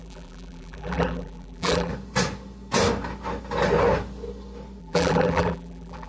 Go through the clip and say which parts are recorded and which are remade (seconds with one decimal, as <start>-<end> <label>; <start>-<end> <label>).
0.0-1.9 remade; 1.9-4.8 recorded; 4.8-6.1 remade

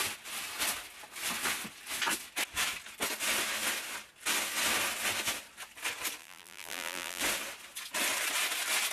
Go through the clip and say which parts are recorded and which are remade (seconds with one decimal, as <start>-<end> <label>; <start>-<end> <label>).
0.0-6.2 recorded; 6.2-7.2 remade; 7.2-8.9 recorded

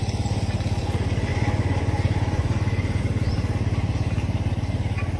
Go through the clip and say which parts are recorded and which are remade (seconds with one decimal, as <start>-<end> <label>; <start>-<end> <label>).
0.0-1.3 recorded; 1.3-3.0 remade; 3.0-5.2 recorded

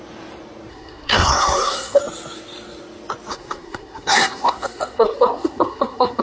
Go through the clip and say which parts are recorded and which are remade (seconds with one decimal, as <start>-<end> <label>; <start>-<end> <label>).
0.0-0.7 recorded; 0.7-2.0 remade; 2.0-3.3 recorded; 3.3-6.2 remade

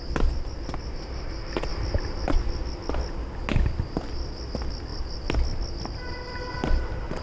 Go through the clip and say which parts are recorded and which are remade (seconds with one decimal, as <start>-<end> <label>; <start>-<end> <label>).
0.0-7.2 recorded